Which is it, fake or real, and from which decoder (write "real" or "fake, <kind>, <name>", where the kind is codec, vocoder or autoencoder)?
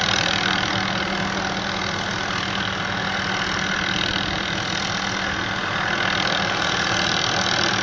real